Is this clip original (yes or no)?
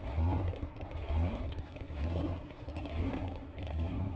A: no